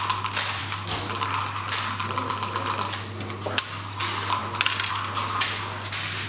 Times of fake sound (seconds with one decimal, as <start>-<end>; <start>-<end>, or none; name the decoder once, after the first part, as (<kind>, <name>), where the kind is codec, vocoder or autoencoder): none